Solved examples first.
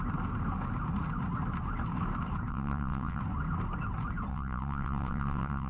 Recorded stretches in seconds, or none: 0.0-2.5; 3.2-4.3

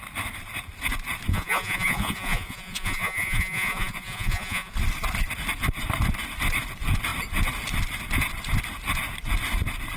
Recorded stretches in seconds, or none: 0.0-1.3; 4.7-10.0